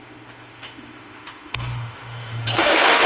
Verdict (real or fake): fake